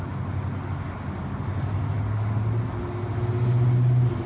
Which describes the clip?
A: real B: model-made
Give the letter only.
A